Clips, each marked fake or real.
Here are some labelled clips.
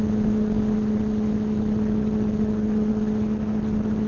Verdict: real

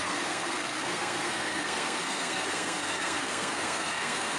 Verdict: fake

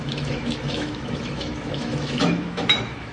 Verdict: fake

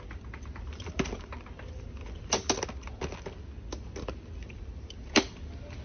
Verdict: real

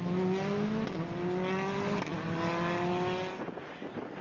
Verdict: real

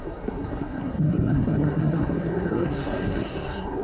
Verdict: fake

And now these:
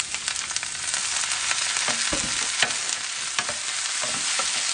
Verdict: real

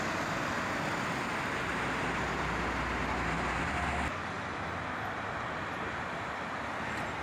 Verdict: real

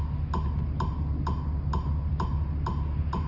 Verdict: real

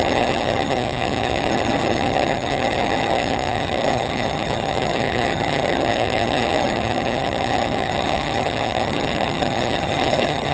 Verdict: fake